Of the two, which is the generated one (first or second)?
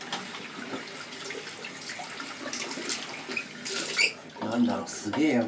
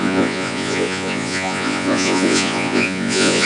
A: second